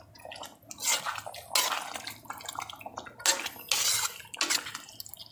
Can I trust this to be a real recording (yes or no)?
yes